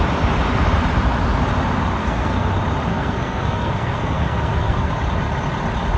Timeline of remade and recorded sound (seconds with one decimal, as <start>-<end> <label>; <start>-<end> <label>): 0.0-2.0 recorded; 2.0-2.5 remade; 2.5-2.9 recorded; 2.9-4.9 remade; 4.9-6.0 recorded